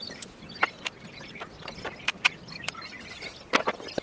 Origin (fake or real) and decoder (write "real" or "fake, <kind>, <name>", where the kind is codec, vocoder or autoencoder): real